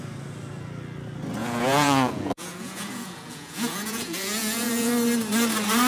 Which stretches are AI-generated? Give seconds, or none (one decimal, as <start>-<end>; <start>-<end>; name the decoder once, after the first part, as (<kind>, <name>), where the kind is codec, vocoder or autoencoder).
1.4-4.9 (vocoder, Vocos)